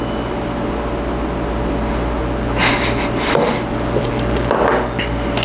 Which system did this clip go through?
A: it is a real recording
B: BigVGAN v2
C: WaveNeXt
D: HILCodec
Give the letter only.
A